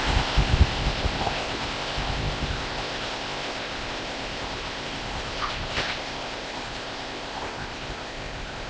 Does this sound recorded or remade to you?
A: remade